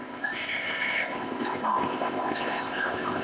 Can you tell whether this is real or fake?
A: fake